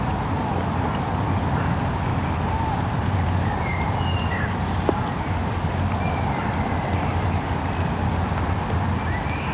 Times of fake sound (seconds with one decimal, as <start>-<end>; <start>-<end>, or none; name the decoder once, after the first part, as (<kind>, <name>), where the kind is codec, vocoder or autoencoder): 2.1-4.3 (vocoder, BigVGAN v2)